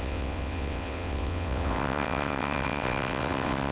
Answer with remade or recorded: remade